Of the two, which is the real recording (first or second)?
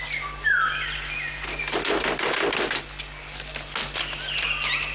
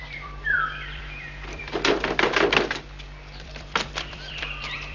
first